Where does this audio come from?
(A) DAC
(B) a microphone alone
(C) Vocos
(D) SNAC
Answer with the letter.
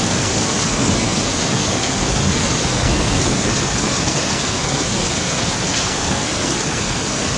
D